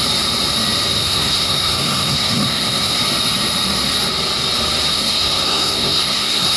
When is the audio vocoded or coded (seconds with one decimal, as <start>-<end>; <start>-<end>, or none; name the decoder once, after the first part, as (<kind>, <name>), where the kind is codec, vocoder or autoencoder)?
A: 1.0-3.0 (codec, SNAC); 4.9-6.6